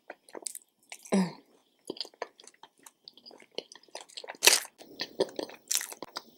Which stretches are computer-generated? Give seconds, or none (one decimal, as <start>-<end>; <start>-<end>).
none